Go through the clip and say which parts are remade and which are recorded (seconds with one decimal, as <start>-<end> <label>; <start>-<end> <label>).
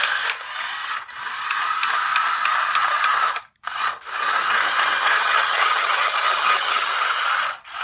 0.0-5.1 recorded; 5.1-6.9 remade; 6.9-7.8 recorded